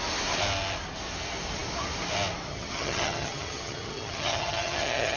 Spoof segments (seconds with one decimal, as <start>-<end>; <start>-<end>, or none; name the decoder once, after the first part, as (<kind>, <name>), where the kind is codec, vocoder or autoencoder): 2.5-5.2 (vocoder, HiFi-GAN)